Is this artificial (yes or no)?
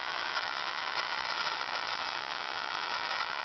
yes